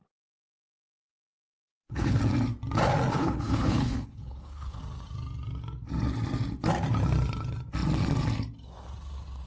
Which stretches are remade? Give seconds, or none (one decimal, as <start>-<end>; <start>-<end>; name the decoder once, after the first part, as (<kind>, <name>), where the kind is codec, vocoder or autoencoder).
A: 1.0-2.2 (codec, HILCodec); 3.1-4.8